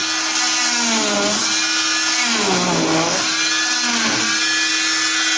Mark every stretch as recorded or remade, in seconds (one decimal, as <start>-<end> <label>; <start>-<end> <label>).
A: 0.0-5.4 recorded